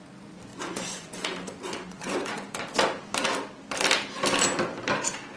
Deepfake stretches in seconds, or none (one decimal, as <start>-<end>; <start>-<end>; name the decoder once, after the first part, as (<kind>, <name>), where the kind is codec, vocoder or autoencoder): 0.5-2.6 (vocoder, Vocos)